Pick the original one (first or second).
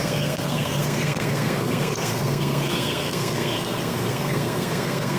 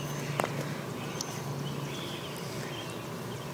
second